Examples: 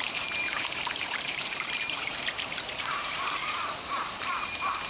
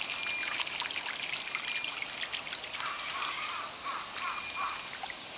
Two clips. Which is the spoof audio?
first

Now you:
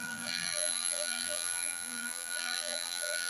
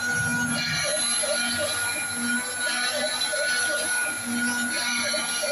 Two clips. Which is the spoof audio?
first